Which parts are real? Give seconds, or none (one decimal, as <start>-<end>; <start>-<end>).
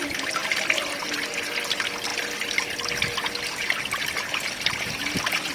0.0-5.5